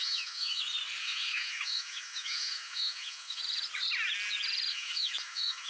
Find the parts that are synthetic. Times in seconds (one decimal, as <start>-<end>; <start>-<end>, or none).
0.0-0.6; 1.0-3.4; 4.7-5.7